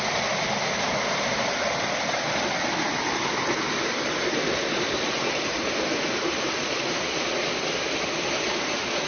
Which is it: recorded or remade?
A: recorded